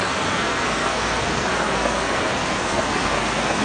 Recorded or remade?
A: remade